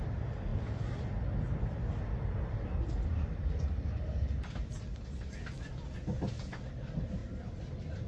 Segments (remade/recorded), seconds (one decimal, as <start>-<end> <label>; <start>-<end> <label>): 0.0-8.1 recorded